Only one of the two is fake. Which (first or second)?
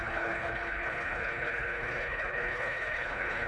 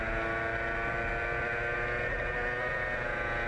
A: first